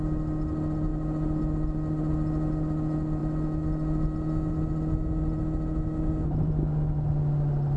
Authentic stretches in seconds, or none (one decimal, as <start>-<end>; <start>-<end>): 0.0-7.8